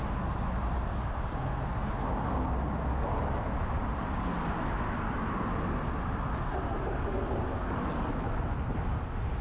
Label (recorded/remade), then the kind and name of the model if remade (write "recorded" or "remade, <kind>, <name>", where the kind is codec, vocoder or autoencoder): recorded